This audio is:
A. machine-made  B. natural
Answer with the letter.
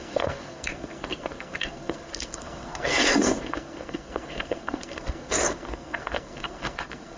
A